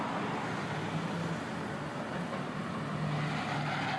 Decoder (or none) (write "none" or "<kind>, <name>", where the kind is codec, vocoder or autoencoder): none